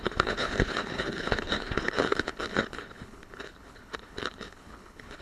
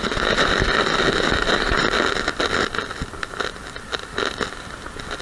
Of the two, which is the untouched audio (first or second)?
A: second